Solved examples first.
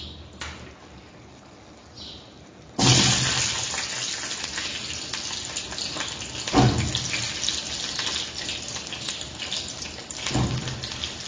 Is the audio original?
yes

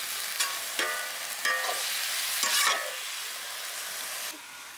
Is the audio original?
yes